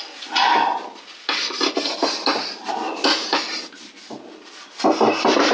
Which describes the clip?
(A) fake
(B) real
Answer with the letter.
B